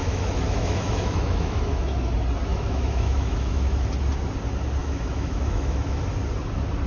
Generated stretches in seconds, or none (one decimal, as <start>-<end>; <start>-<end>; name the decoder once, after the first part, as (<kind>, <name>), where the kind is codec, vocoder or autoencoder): 0.0-2.1 (autoencoder, DAC-VAE); 2.5-3.9; 4.8-6.0